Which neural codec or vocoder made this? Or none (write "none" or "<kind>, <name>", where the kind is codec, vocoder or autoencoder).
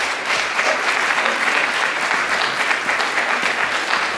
none